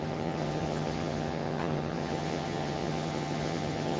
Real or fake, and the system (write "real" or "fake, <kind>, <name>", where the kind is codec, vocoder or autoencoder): fake, vocoder, HiFi-GAN